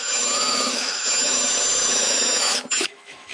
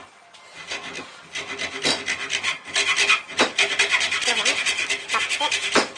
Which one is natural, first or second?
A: second